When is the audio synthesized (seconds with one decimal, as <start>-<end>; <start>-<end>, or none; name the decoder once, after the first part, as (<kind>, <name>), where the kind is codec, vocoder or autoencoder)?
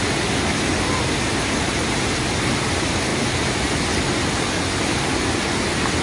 none